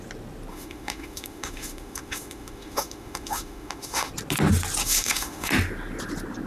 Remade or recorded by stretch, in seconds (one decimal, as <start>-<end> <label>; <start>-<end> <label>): 0.0-0.5 recorded; 0.5-4.1 remade; 4.1-4.8 recorded; 4.8-5.5 remade; 5.5-6.5 recorded